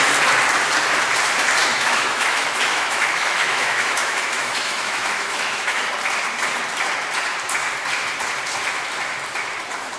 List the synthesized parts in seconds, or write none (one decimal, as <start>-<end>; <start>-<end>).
1.6-5.9